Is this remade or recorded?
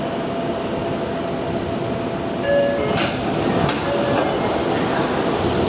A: recorded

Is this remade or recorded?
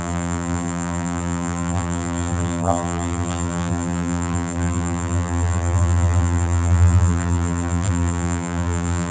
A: remade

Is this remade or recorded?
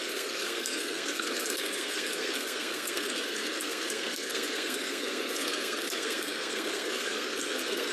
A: remade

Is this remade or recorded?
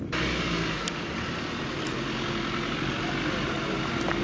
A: recorded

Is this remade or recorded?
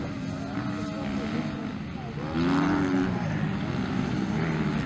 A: recorded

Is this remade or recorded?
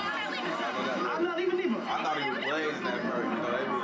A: recorded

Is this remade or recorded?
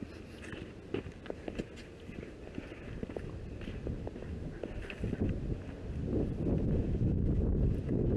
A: recorded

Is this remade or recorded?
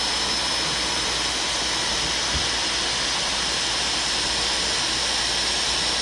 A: recorded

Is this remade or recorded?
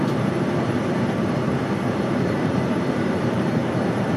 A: remade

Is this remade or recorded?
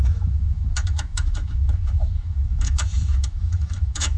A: remade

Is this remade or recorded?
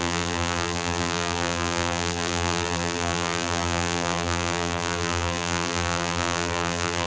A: remade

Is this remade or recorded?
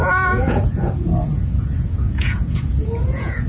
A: remade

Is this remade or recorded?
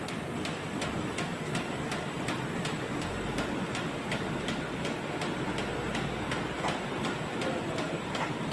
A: recorded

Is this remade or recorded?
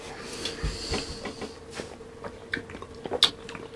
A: recorded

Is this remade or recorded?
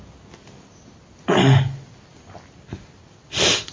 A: recorded